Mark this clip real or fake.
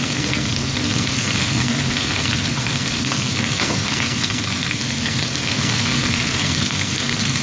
fake